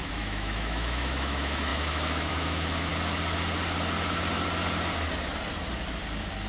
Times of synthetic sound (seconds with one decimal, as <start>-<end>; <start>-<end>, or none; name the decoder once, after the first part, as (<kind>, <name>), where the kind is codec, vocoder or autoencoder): 0.0-2.9 (autoencoder, DAC-VAE)